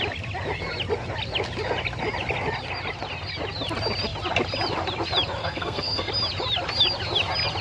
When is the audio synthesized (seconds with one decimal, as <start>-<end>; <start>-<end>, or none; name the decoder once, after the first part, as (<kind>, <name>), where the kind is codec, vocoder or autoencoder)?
5.4-6.1 (codec, SNAC)